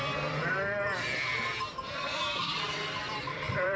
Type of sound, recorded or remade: remade